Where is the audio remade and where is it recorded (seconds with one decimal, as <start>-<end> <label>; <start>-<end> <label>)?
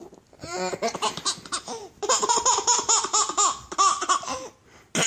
0.0-5.1 recorded